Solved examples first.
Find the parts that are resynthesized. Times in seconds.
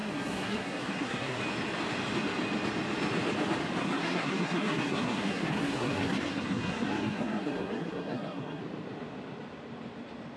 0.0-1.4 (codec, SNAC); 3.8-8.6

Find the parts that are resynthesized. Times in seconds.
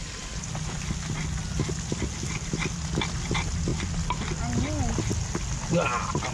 none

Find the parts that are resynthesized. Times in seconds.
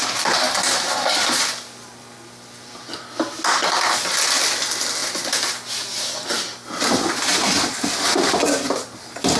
none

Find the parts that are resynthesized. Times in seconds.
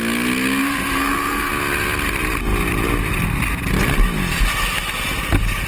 0.6-1.5 (codec, SNAC)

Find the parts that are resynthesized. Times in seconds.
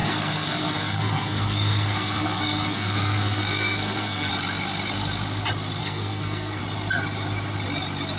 0.0-4.3 (codec, SNAC); 5.8-6.6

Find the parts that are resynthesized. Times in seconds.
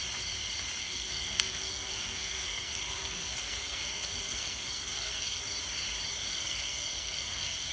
0.8-5.4 (codec, SNAC); 6.3-7.7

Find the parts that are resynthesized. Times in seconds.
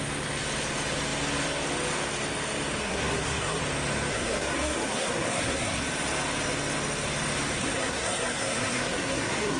2.8-3.6 (codec, SNAC); 4.1-5.8; 7.6-9.6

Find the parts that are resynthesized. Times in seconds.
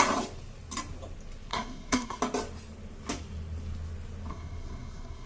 1.5-2.2 (codec, SNAC); 4.3-5.3